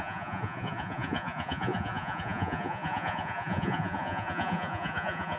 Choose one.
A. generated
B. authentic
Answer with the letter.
A